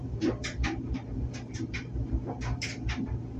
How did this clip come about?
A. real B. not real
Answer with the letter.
B